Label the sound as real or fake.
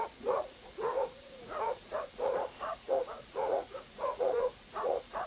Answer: fake